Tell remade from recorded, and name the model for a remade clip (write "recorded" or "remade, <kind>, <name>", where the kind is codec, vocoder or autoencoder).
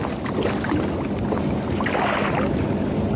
recorded